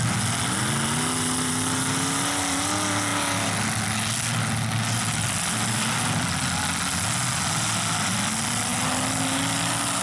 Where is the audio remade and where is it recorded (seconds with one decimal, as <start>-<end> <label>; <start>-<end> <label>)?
0.0-10.0 recorded